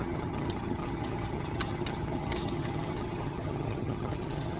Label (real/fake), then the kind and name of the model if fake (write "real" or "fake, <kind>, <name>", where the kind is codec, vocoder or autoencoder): fake, vocoder, HiFi-GAN